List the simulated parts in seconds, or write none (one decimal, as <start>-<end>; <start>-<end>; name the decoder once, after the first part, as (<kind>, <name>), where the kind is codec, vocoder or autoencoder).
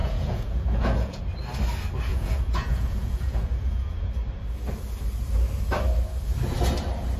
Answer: 0.0-1.2 (vocoder, Vocos); 2.1-4.1